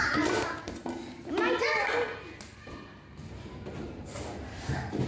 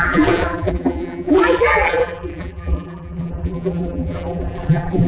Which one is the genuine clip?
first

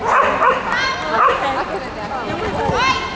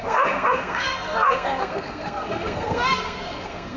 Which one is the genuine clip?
first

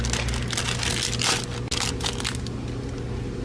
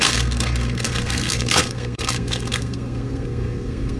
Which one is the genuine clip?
first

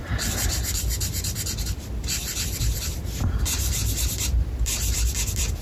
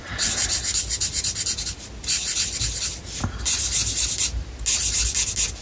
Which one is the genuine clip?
second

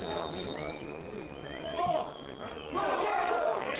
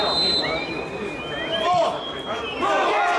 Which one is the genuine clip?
second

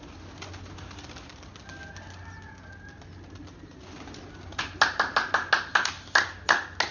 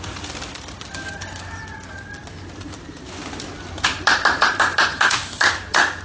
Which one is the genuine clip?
first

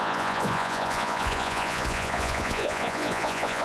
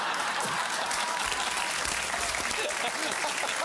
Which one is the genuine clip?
second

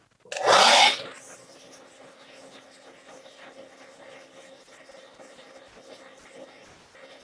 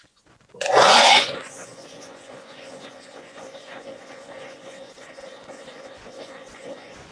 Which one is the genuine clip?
first